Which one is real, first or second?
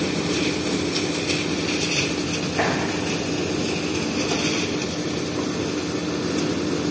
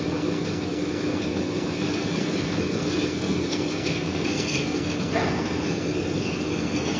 first